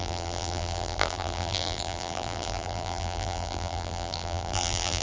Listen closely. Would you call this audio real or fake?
fake